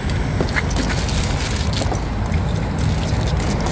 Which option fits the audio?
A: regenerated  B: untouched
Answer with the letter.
B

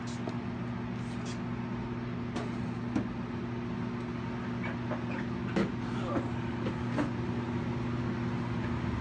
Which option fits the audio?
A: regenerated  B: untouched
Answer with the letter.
B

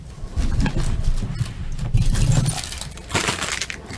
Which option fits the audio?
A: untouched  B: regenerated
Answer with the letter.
A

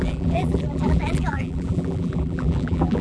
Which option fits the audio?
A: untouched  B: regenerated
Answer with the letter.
B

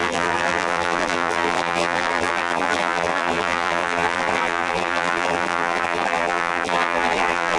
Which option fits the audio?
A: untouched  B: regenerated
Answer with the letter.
B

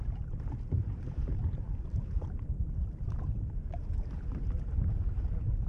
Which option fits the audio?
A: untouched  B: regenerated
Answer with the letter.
B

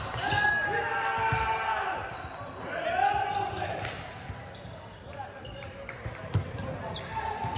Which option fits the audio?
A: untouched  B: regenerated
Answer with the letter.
A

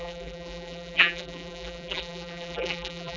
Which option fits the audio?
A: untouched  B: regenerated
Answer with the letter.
B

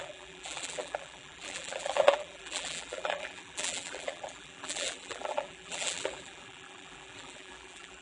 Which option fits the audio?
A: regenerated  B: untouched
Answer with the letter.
A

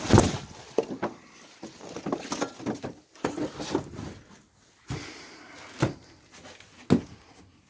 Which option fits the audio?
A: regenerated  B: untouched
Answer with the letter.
B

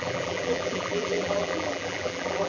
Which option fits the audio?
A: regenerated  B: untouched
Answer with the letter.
A